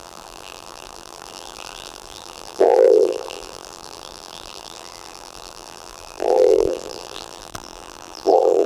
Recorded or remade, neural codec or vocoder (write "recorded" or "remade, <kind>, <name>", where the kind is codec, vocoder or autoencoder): remade, vocoder, BigVGAN v2